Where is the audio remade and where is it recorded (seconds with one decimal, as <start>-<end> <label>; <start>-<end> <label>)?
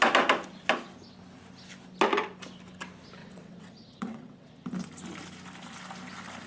0.0-3.2 recorded; 3.2-4.5 remade; 4.5-6.5 recorded